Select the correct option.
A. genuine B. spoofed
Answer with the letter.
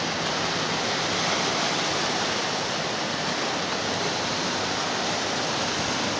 A